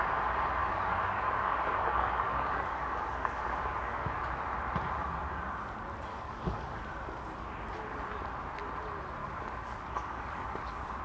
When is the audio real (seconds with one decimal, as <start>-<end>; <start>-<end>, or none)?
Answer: 0.0-0.6; 4.2-6.1; 6.8-9.2